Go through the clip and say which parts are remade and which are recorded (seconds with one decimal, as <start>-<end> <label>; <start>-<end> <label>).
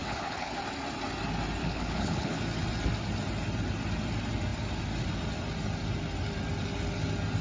0.0-0.5 remade; 0.5-1.6 recorded; 1.6-2.4 remade; 2.4-7.4 recorded